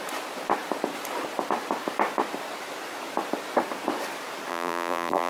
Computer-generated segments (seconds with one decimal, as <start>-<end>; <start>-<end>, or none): 4.5-5.3